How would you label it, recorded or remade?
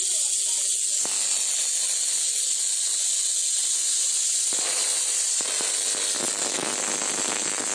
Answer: recorded